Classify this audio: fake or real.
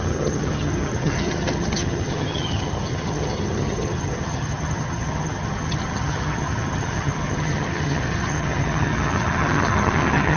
fake